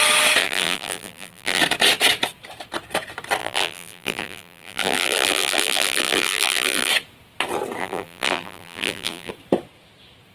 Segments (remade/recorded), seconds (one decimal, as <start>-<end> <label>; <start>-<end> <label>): 0.0-0.4 recorded; 0.4-1.6 remade; 1.6-3.4 recorded; 3.4-6.9 remade; 6.9-7.8 recorded; 7.8-9.3 remade; 9.3-10.3 recorded